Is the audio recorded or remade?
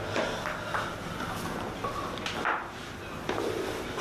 recorded